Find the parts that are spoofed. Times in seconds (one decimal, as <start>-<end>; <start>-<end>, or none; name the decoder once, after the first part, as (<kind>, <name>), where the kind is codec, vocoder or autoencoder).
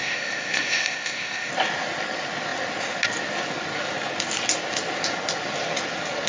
0.0-1.5 (codec, ZipCodec)